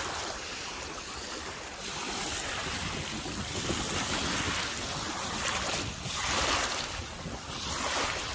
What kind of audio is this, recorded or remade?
recorded